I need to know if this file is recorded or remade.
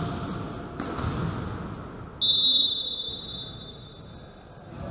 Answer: recorded